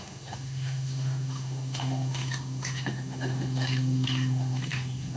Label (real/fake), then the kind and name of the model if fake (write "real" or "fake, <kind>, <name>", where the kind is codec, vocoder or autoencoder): fake, autoencoder, DAC-VAE